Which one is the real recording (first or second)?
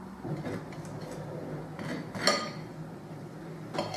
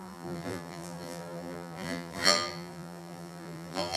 first